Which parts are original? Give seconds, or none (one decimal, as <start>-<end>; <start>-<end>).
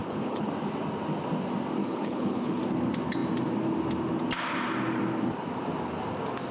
0.5-1.8; 2.6-6.5